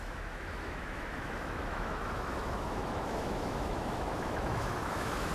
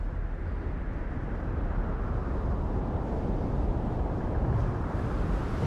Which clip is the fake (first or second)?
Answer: first